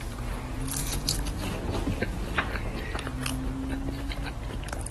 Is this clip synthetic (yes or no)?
no